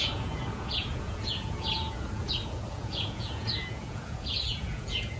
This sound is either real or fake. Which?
fake